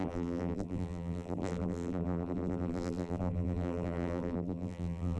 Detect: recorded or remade remade